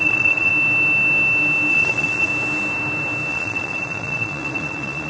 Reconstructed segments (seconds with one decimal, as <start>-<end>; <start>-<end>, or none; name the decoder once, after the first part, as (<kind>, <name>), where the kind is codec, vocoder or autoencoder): 0.0-0.5 (vocoder, Vocos); 1.7-2.3; 3.3-5.1